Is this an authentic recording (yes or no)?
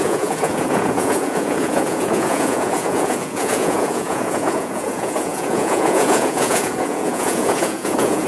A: no